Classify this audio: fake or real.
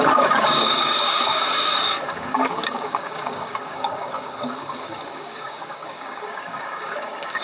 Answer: fake